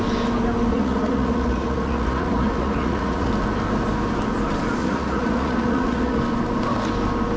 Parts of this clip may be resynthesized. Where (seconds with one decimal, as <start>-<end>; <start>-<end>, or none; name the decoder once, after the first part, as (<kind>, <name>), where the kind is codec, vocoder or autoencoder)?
0.7-3.3 (vocoder, Vocos); 4.8-6.2